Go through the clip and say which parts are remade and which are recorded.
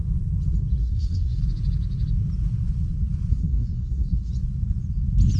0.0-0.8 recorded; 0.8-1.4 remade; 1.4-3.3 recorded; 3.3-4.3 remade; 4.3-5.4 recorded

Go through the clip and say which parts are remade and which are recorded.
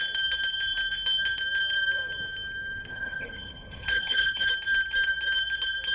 0.0-2.9 recorded; 2.9-4.5 remade; 4.5-5.9 recorded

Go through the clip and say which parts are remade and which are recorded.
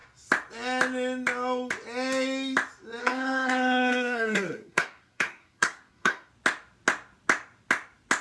0.0-3.0 recorded; 3.0-6.3 remade; 6.3-8.2 recorded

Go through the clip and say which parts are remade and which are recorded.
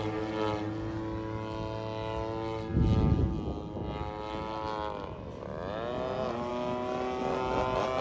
0.0-8.0 recorded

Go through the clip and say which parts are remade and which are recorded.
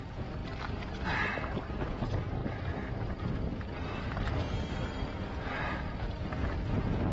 0.0-0.4 remade; 0.4-1.7 recorded; 1.7-2.4 remade; 2.4-6.6 recorded; 6.6-7.1 remade